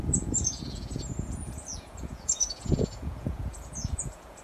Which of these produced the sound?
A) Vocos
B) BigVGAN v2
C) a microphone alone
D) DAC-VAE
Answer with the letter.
A